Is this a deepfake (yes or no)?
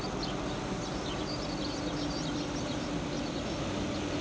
no